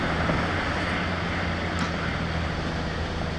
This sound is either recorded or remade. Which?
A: recorded